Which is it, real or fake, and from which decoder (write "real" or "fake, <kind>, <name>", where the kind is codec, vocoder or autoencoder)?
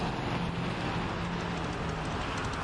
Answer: real